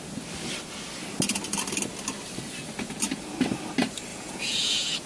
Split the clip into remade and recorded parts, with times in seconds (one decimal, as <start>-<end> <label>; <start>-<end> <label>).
0.0-4.1 recorded; 4.1-5.1 remade